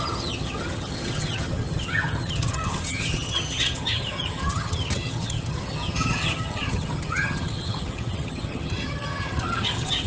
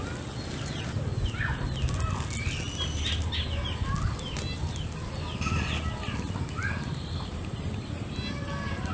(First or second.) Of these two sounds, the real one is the second